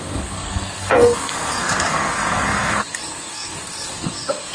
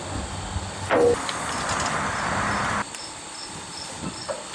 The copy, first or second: first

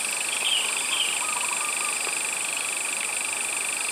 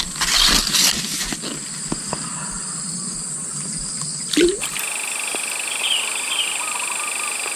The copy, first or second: first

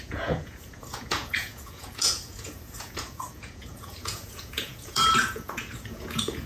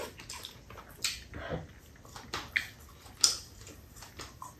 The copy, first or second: first